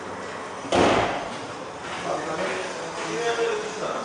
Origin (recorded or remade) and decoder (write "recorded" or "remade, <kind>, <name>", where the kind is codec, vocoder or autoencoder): recorded